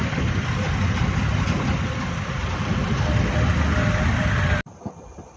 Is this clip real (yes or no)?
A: yes